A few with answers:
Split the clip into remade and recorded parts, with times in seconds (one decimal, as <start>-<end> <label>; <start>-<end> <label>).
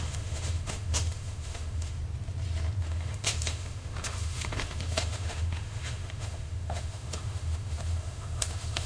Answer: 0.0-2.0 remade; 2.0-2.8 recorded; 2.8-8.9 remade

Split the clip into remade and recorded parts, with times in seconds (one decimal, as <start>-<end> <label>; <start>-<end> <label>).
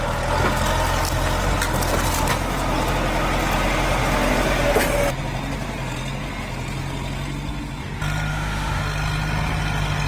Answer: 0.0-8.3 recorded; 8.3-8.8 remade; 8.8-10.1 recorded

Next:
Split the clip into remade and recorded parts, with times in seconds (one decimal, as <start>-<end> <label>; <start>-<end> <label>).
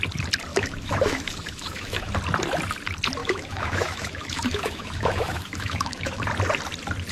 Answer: 0.0-0.5 recorded; 0.5-2.1 remade; 2.1-3.2 recorded; 3.2-6.2 remade; 6.2-7.1 recorded